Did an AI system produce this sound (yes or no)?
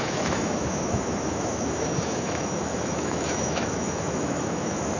yes